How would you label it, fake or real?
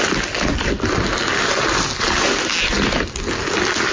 real